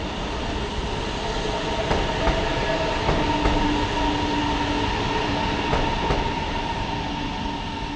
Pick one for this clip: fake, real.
real